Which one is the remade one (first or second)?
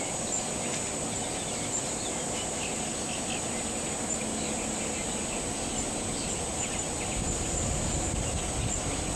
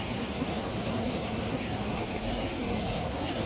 second